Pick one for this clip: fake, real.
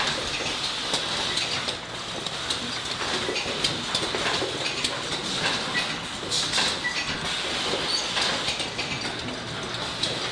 real